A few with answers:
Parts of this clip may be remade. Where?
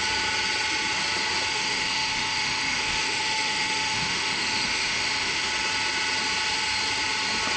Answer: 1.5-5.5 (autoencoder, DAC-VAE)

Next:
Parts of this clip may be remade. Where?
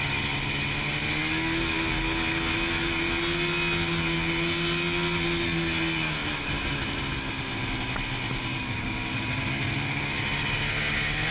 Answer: none